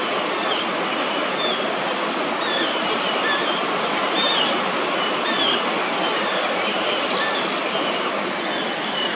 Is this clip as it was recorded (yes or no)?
yes